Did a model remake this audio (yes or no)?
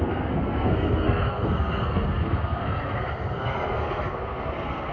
yes